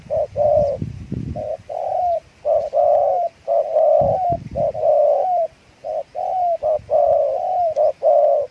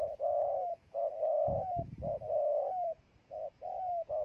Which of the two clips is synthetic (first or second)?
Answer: second